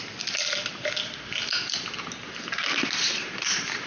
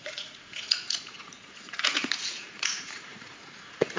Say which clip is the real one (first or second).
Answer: first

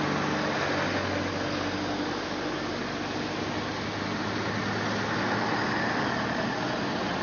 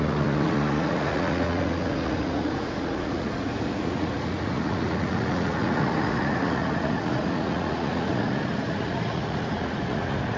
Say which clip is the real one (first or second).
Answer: first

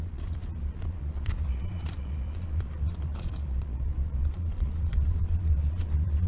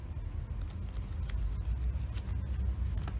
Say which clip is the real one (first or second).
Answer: second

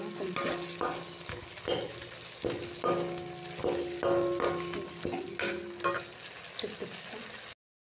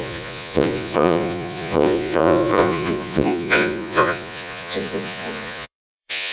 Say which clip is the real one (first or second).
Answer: first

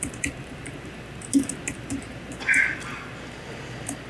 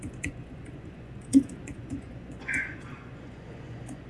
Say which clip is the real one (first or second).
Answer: first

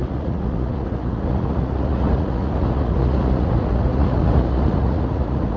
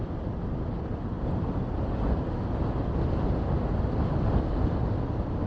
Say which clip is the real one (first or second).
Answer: second